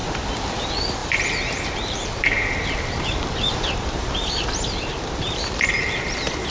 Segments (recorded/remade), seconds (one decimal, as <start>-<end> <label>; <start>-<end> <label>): 0.0-6.5 recorded